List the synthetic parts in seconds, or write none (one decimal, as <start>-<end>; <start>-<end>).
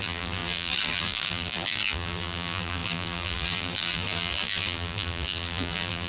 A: 0.0-6.1